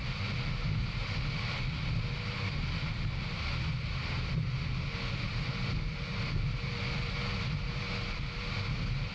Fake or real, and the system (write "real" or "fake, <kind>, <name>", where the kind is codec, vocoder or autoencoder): real